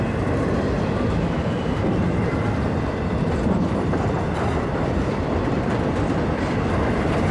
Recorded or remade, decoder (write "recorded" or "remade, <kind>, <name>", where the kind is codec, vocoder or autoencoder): remade, vocoder, BigVGAN v2